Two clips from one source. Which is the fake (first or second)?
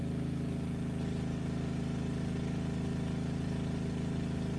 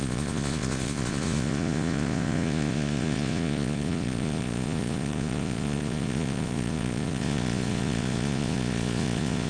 second